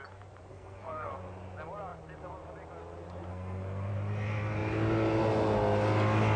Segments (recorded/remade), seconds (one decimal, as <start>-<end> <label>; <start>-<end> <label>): 0.0-0.5 recorded; 0.5-1.1 remade; 1.1-3.3 recorded; 3.3-3.9 remade; 3.9-6.4 recorded